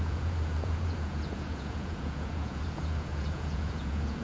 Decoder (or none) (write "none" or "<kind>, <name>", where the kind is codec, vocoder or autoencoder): vocoder, Vocos